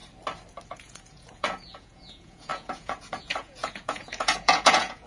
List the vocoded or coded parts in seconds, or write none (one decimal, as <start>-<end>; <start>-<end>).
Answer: 0.7-5.1